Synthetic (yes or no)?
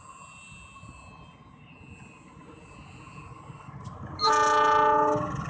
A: no